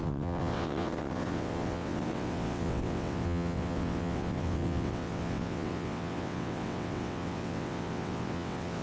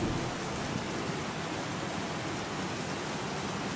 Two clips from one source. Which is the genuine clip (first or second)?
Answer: second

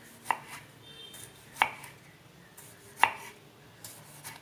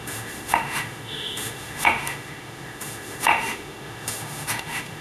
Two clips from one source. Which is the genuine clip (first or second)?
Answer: first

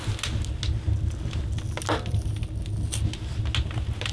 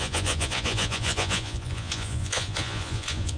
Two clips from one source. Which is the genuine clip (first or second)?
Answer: first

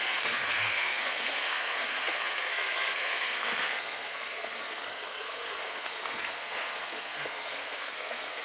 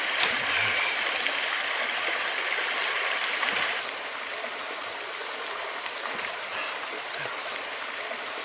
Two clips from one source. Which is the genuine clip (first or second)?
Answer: second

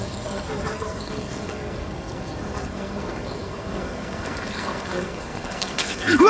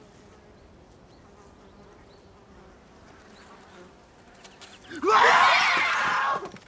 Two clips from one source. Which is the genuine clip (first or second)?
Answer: second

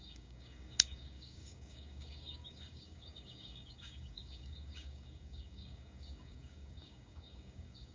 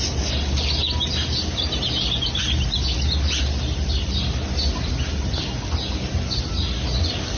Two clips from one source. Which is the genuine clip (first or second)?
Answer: second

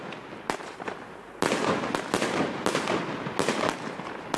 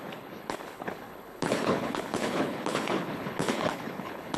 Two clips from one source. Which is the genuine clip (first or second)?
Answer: first